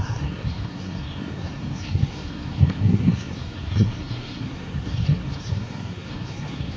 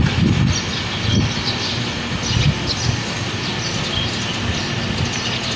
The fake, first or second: first